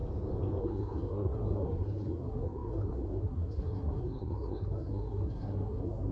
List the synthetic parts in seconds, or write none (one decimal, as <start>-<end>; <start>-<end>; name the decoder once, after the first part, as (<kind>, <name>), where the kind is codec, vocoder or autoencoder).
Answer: 0.6-6.1 (codec, SNAC)